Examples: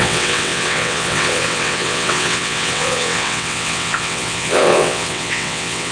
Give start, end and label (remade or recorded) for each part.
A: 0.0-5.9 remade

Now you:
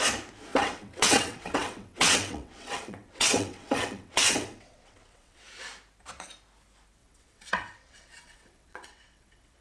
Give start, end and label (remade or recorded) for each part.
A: 0.0-0.5 recorded; 0.5-5.4 remade; 5.4-7.0 recorded; 7.0-9.6 remade

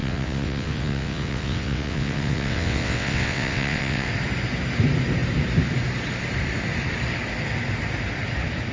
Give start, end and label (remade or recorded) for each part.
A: 0.0-4.1 remade; 4.1-8.7 recorded

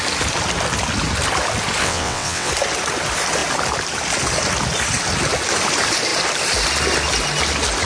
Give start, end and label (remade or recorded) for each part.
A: 0.0-1.8 recorded; 1.8-2.5 remade; 2.5-7.9 recorded